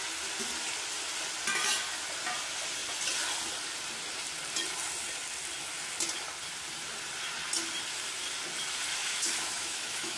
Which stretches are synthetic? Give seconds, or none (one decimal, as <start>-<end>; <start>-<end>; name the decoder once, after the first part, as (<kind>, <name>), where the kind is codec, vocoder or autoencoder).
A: 9.0-10.2 (autoencoder, DAC-VAE)